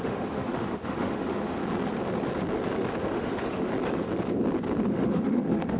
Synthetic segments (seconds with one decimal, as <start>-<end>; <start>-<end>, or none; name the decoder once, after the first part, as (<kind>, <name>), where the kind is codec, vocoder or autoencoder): 0.0-1.6 (autoencoder, DAC-VAE); 3.0-3.7; 4.9-5.8